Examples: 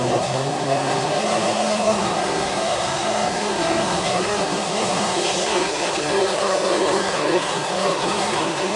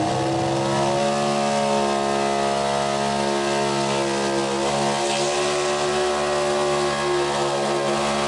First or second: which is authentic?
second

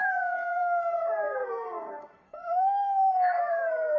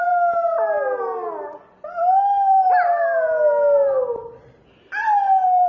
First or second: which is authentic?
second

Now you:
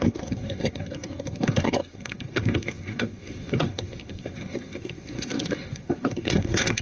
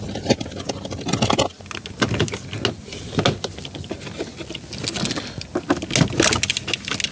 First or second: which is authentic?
second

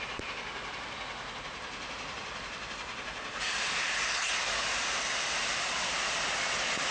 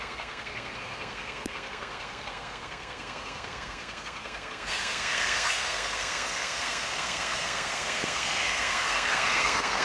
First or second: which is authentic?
first